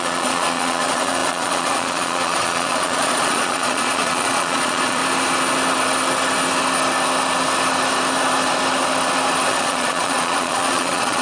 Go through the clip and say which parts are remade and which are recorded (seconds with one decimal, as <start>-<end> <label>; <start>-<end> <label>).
0.0-5.0 remade; 5.0-9.5 recorded; 9.5-11.2 remade